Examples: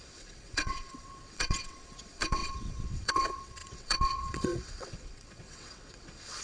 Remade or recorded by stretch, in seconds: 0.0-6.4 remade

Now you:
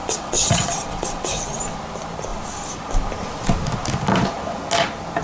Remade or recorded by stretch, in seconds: 0.0-1.6 remade; 1.6-5.2 recorded

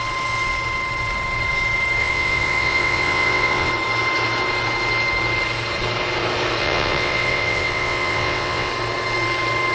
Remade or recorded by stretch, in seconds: 0.0-2.0 recorded; 2.0-3.7 remade; 3.7-6.6 recorded; 6.6-8.7 remade; 8.7-9.7 recorded

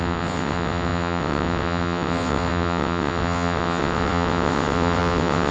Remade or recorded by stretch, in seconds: 0.0-5.5 remade

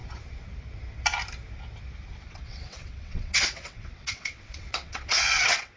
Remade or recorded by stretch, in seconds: 0.0-2.1 recorded; 2.1-5.8 remade

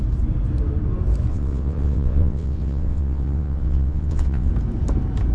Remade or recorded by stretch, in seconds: 0.0-1.3 recorded; 1.3-4.5 remade; 4.5-5.3 recorded

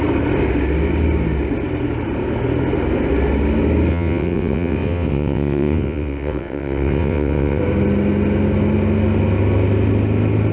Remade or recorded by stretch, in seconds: 0.0-3.9 recorded; 3.9-7.6 remade; 7.6-10.5 recorded